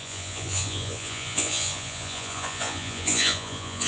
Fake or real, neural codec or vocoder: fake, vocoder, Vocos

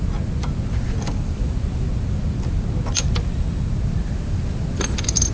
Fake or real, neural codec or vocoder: real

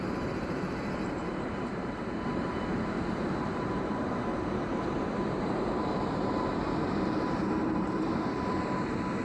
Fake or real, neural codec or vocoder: fake, vocoder, BigVGAN v2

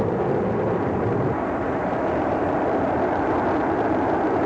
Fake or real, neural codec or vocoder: real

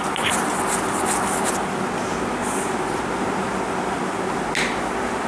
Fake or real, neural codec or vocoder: real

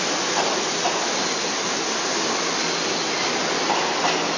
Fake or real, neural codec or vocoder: real